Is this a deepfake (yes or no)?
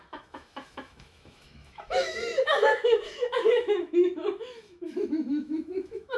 yes